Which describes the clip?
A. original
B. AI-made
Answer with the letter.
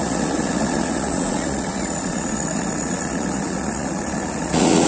B